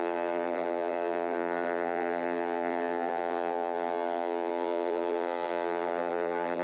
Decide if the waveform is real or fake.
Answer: fake